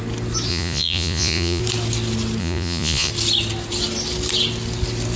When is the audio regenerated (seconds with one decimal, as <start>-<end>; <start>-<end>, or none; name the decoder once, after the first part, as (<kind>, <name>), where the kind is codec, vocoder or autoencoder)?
0.5-1.6 (vocoder, Vocos); 2.4-3.1